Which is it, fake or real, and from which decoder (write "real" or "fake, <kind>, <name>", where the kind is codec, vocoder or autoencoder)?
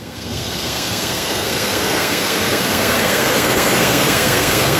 fake, codec, SNAC